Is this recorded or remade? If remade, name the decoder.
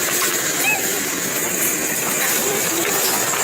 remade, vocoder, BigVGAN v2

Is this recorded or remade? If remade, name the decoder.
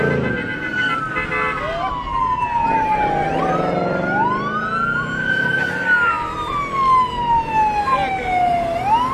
recorded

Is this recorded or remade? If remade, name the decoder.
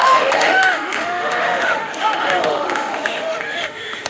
remade, autoencoder, DAC-VAE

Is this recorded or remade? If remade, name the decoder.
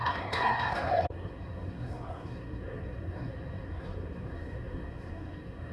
remade, codec, SNAC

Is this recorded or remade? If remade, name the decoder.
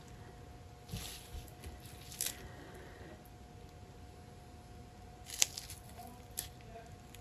recorded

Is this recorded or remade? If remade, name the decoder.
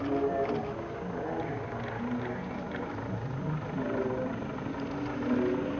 recorded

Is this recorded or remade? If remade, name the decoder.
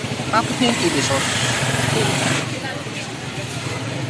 remade, vocoder, BigVGAN v2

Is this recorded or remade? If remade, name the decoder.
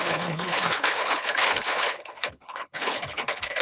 remade, codec, HILCodec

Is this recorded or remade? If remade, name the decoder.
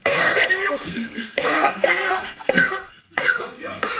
remade, codec, SNAC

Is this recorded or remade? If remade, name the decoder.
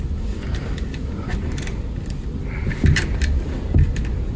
recorded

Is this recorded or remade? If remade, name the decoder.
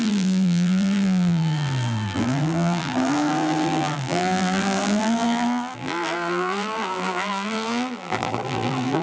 remade, vocoder, BigVGAN v2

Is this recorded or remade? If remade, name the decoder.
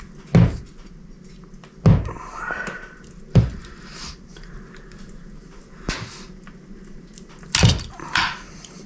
recorded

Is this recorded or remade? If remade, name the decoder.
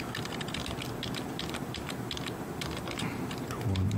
recorded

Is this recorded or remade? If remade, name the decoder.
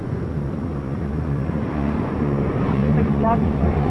remade, vocoder, Vocos